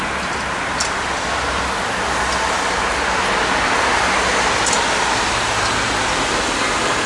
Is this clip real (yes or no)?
yes